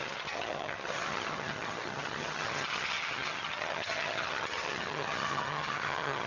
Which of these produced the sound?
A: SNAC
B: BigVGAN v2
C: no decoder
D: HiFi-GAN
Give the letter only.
D